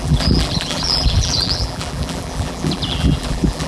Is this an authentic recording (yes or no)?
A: no